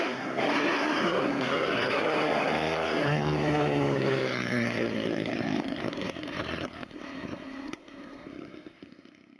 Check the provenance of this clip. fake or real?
fake